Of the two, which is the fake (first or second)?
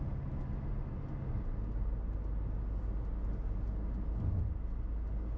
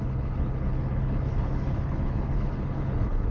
second